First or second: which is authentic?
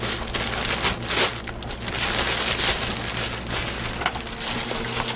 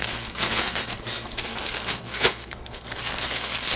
first